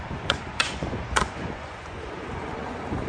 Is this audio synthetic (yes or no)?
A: yes